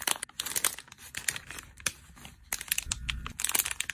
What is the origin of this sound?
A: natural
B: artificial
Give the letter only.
A